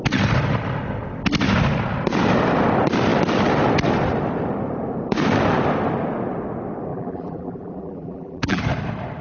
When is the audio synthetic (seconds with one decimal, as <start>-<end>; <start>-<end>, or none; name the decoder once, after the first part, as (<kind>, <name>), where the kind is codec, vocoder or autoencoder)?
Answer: 6.9-8.6 (vocoder, BigVGAN v2)